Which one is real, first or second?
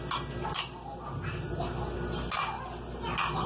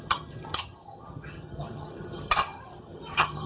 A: first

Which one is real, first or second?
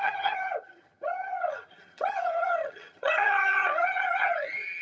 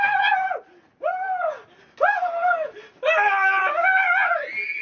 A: second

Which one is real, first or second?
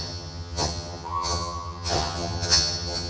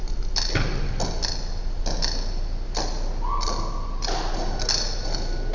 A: second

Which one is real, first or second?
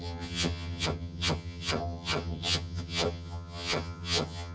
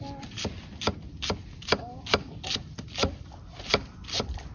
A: second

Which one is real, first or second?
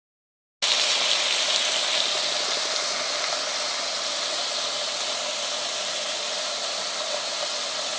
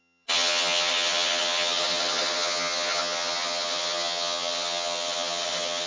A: first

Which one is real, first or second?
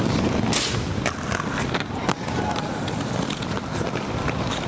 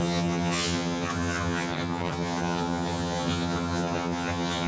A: first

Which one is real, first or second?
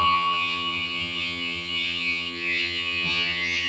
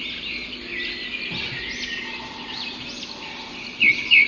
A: second